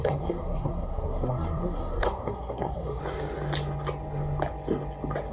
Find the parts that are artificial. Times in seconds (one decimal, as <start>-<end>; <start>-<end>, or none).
0.0-3.0

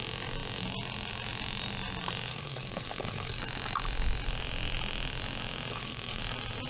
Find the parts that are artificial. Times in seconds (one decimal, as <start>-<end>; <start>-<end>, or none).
2.3-3.4; 5.7-6.2